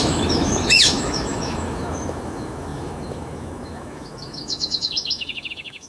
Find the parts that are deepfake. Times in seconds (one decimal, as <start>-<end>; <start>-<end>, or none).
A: 0.0-5.9